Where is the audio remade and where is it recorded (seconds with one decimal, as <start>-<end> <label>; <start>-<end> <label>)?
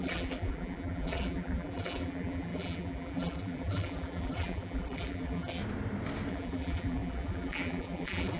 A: 0.0-5.6 remade; 5.6-6.3 recorded; 6.3-8.4 remade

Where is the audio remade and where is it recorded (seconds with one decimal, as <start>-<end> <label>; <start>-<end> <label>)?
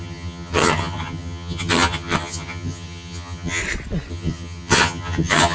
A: 0.0-3.6 remade; 3.6-4.1 recorded; 4.1-5.5 remade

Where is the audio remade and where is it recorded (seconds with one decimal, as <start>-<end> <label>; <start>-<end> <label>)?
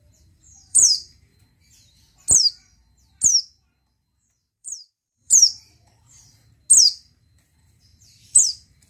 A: 0.0-1.3 remade; 1.3-4.5 recorded; 4.5-6.2 remade; 6.2-6.8 recorded; 6.8-8.9 remade